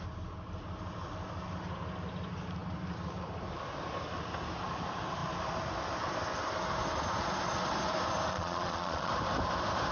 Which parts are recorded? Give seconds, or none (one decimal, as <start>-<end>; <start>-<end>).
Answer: 0.0-8.3; 9.1-9.9